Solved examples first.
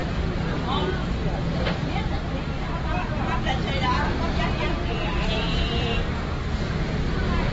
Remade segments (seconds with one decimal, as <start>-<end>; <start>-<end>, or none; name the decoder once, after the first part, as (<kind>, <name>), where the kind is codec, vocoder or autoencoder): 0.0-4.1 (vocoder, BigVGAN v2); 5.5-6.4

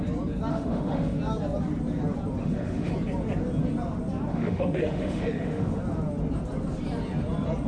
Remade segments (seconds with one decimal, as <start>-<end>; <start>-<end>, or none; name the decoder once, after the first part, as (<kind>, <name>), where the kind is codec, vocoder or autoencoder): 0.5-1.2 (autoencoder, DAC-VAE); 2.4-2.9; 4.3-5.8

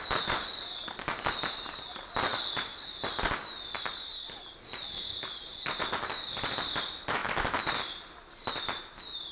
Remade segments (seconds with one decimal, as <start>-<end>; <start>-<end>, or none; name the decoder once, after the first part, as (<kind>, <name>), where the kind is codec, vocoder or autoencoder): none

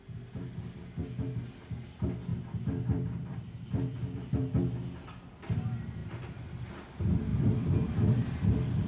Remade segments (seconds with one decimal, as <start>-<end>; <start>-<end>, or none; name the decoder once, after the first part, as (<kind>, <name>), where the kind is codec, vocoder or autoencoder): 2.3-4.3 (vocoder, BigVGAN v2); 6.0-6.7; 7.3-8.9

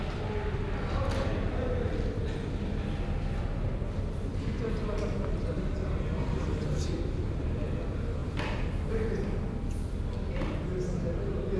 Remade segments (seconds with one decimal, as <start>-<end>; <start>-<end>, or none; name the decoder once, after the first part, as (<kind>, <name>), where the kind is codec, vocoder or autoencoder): 8.2-8.9 (vocoder, BigVGAN v2)

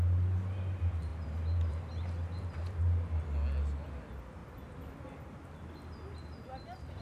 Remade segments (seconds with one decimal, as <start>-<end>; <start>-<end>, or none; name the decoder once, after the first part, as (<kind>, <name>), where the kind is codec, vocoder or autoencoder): 1.1-2.8 (vocoder, BigVGAN v2)

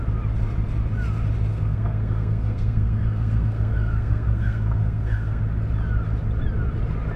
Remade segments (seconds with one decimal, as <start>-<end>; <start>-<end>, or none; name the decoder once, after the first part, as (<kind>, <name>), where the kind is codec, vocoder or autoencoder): 1.5-5.4 (codec, SNAC)